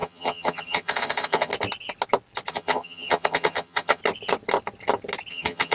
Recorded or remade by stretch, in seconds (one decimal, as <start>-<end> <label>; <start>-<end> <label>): 0.0-1.5 remade; 1.5-2.5 recorded; 2.5-4.0 remade; 4.0-5.3 recorded; 5.3-5.7 remade